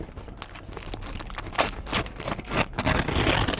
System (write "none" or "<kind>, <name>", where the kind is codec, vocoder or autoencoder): none